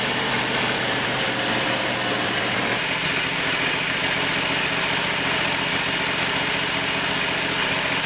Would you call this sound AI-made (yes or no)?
no